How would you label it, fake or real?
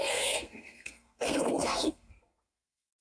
fake